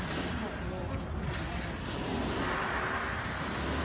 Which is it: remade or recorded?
recorded